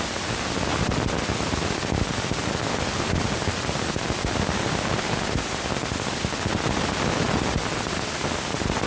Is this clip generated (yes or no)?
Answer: no